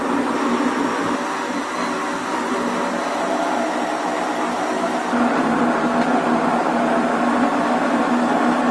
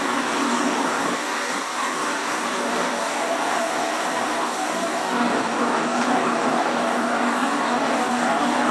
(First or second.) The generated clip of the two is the second